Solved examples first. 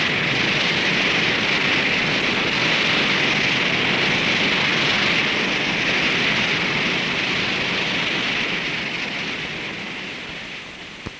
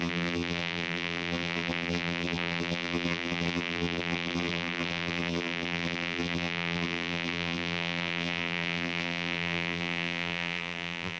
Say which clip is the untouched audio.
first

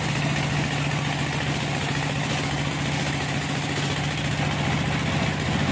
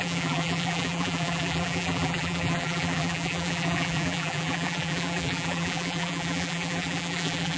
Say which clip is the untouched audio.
first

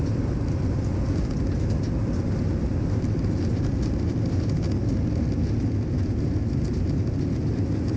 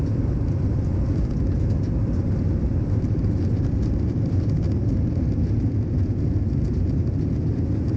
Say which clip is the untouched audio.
first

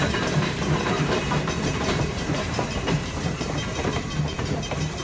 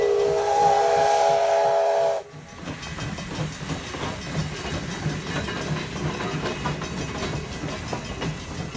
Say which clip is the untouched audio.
second